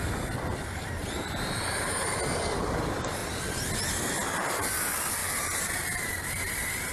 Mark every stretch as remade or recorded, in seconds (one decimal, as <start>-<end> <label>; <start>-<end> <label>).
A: 0.0-1.0 recorded; 1.0-2.0 remade; 2.0-5.2 recorded; 5.2-6.9 remade